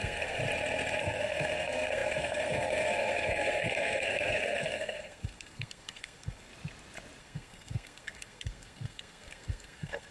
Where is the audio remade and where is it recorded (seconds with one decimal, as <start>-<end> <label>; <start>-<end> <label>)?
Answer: 0.0-0.4 remade; 0.4-1.0 recorded; 1.0-6.5 remade; 6.5-7.2 recorded; 7.2-10.1 remade